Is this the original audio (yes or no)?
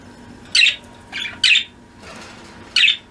yes